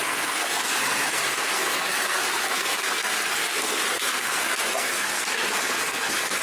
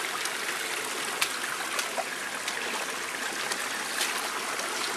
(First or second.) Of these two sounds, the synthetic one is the first